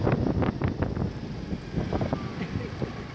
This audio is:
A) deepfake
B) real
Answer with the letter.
B